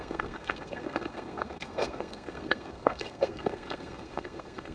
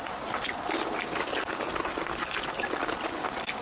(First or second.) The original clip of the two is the second